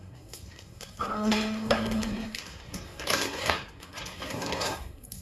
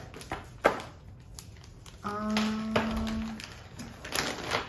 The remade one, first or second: first